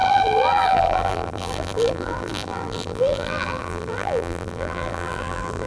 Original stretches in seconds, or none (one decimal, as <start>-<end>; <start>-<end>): none